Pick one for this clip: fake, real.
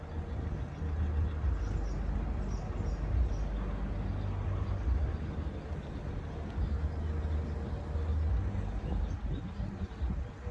real